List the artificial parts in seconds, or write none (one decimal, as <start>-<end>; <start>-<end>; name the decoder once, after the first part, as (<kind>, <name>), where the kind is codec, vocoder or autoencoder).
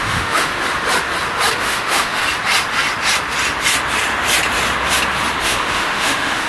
0.0-0.5 (autoencoder, DAC-VAE); 1.5-2.2; 5.4-6.5